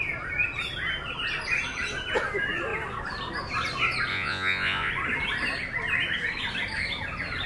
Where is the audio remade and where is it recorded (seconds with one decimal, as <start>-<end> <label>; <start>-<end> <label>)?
0.0-4.1 recorded; 4.1-4.9 remade; 4.9-7.5 recorded